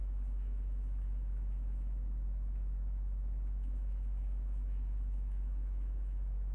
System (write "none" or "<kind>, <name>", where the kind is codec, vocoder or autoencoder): autoencoder, DAC-VAE